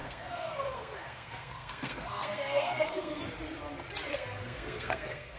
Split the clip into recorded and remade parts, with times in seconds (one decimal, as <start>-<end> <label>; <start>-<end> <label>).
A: 0.0-3.2 remade; 3.2-4.1 recorded; 4.1-5.4 remade